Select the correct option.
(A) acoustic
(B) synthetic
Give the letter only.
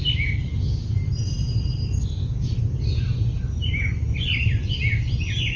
A